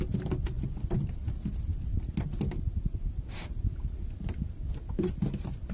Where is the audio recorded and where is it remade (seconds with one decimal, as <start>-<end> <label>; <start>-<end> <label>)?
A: 0.0-5.7 recorded